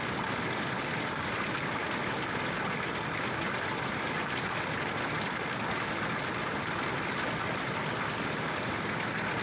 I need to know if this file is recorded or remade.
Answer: recorded